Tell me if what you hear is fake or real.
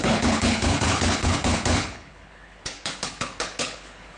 fake